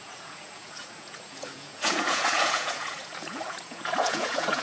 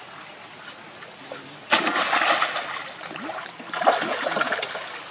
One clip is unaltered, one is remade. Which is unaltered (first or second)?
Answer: second